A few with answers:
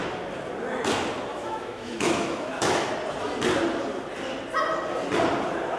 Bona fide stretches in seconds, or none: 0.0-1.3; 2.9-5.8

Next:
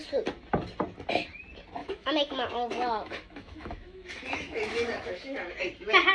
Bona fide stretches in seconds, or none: 0.0-1.8; 5.5-6.1

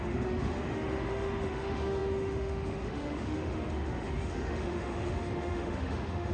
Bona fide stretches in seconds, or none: none

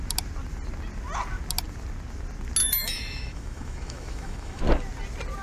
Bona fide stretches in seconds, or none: 0.0-2.6; 4.6-5.4

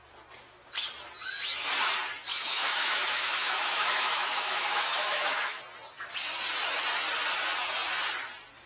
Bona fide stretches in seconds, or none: 0.0-2.3; 5.6-8.7

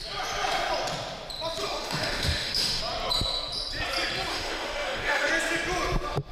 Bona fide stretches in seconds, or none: 0.0-1.6; 2.8-4.3; 5.3-6.3

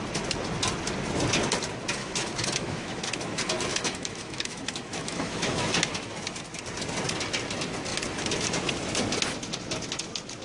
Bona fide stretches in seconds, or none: 0.0-2.0; 3.1-3.7; 5.7-10.4

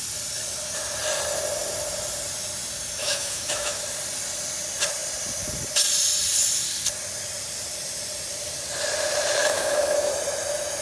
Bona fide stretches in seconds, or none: 0.0-3.0; 3.8-9.4; 10.1-10.8